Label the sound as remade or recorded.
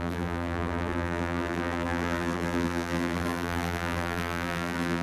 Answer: remade